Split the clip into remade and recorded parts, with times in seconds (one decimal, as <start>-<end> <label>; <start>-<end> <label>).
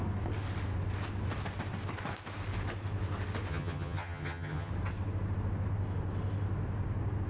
0.0-3.5 recorded; 3.5-4.7 remade; 4.7-7.3 recorded